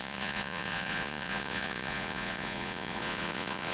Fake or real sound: fake